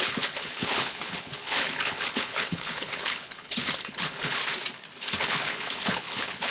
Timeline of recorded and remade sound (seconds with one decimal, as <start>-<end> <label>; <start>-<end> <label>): 0.0-4.4 remade; 4.4-5.0 recorded; 5.0-6.5 remade